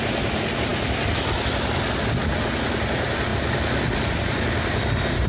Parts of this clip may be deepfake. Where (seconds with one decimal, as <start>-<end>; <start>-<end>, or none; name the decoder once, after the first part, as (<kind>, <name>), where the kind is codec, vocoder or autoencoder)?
none